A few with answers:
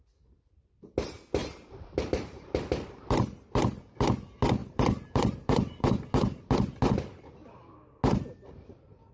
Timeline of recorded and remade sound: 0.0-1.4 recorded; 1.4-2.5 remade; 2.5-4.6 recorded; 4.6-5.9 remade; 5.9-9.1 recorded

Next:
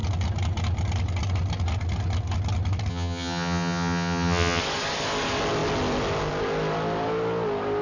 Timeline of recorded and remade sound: 0.0-2.9 recorded; 2.9-4.6 remade; 4.6-7.8 recorded

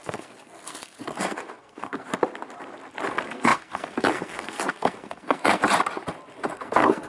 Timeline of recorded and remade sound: 0.0-2.1 remade; 2.1-3.1 recorded; 3.1-5.6 remade; 5.6-6.4 recorded; 6.4-7.1 remade

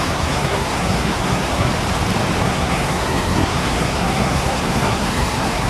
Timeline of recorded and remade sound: 0.0-1.7 remade; 1.7-2.4 recorded; 2.4-5.7 remade

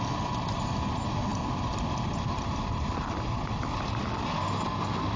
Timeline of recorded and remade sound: 0.0-5.2 recorded

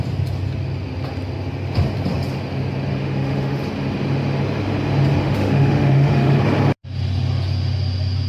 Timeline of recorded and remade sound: 0.0-2.9 recorded; 2.9-3.6 remade; 3.6-5.2 recorded; 5.2-6.4 remade; 6.4-8.3 recorded

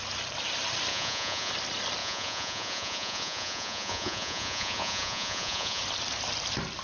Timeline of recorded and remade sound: 0.0-0.9 recorded; 0.9-1.5 remade; 1.5-2.0 recorded; 2.0-5.8 remade; 5.8-6.8 recorded